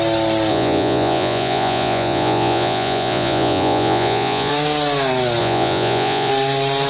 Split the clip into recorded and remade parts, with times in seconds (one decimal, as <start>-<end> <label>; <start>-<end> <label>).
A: 0.0-0.5 recorded; 0.5-4.5 remade; 4.5-5.4 recorded; 5.4-6.3 remade; 6.3-6.9 recorded